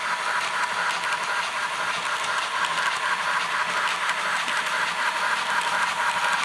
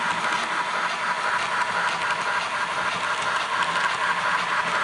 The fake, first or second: first